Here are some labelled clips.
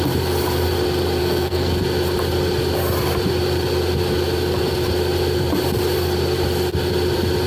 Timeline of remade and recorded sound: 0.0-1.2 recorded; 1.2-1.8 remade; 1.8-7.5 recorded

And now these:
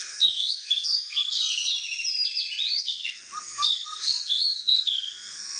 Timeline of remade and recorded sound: 0.0-1.7 remade; 1.7-2.8 recorded; 2.8-5.6 remade

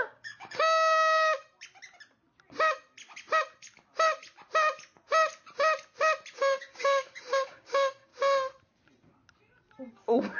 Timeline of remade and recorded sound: 0.0-1.4 remade; 1.4-6.3 recorded; 6.3-8.1 remade; 8.1-9.9 recorded; 9.9-10.4 remade

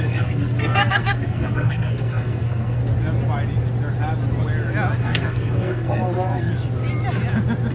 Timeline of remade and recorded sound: 0.0-2.8 remade; 2.8-5.0 recorded; 5.0-6.5 remade; 6.5-7.7 recorded

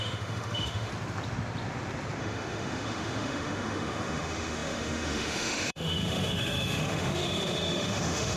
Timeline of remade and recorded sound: 0.0-0.9 remade; 0.9-2.2 recorded; 2.2-8.4 remade

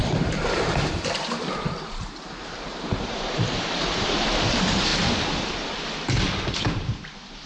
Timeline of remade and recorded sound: 0.0-4.9 remade; 4.9-6.6 recorded; 6.6-7.5 remade